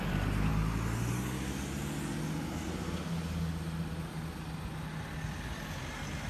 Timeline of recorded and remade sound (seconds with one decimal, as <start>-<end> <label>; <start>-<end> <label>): 0.0-6.3 recorded